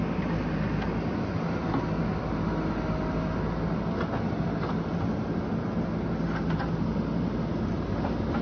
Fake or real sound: real